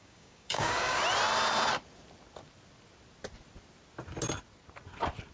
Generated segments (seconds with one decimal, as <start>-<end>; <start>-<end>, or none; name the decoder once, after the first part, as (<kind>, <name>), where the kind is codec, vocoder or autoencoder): 0.0-1.0 (codec, DAC)